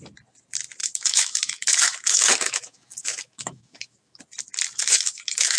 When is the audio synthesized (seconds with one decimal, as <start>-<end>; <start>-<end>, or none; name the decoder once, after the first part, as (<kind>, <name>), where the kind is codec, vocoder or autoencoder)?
0.8-4.2 (autoencoder, DAC-VAE); 4.8-5.6